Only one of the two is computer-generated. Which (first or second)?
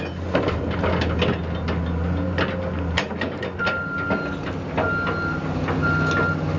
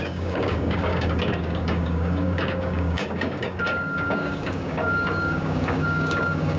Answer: second